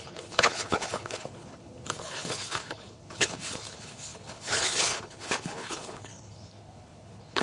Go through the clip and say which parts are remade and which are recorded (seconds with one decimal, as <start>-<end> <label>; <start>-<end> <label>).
0.0-7.4 remade